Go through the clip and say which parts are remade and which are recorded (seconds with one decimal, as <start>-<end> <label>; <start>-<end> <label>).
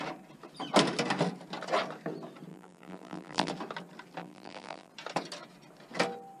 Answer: 0.0-2.5 recorded; 2.5-3.5 remade; 3.5-4.2 recorded; 4.2-4.9 remade; 4.9-6.4 recorded